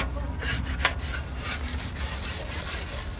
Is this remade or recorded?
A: recorded